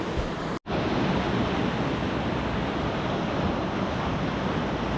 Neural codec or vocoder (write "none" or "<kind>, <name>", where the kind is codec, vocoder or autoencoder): none